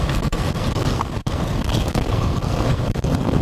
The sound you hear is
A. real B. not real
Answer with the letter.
B